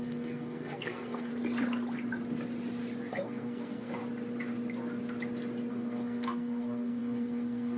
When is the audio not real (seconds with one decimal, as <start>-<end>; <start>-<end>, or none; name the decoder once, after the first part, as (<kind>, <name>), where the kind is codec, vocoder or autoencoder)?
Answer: 0.0-1.3 (codec, SNAC); 3.1-4.0; 5.7-7.8